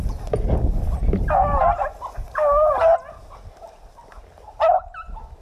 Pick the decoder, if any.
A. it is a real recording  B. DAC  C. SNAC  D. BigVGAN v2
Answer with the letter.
A